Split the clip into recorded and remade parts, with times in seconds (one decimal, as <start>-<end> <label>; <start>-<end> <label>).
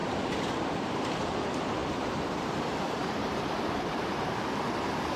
0.0-1.8 recorded; 1.8-4.3 remade; 4.3-5.2 recorded